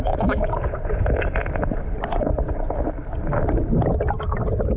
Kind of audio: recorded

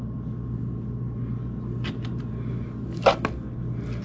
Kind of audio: recorded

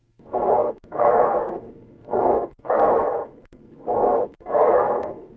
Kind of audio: remade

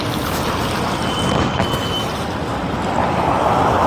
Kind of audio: recorded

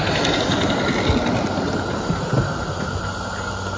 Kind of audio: recorded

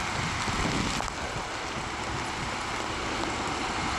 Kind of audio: recorded